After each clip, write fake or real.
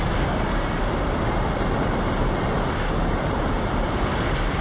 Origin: real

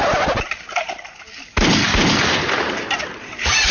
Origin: real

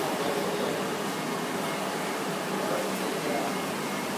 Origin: real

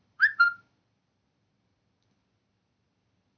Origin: real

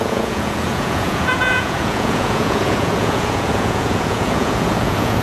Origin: fake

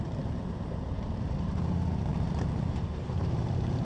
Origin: fake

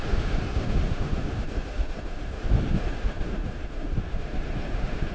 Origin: fake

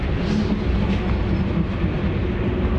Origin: real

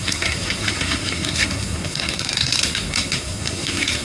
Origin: fake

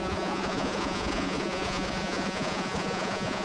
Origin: fake